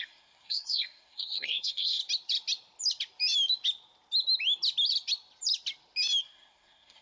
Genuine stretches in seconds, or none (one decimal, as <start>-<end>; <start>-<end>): 2.0-6.2